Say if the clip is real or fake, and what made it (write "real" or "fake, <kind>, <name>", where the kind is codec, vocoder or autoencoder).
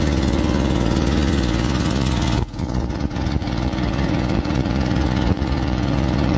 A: fake, vocoder, Vocos